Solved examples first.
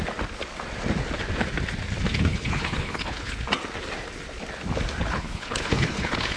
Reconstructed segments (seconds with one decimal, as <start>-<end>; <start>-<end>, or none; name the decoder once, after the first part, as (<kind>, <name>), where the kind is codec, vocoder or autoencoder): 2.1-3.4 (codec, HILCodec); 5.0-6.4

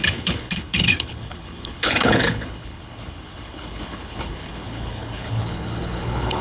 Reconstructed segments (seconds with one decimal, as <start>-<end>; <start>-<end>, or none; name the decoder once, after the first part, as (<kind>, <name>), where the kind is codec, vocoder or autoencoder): 0.0-6.4 (codec, HILCodec)

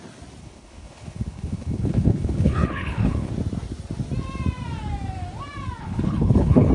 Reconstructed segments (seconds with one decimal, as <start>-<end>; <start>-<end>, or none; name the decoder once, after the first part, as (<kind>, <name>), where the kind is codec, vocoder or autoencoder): 0.4-3.3 (codec, HILCodec); 5.8-6.7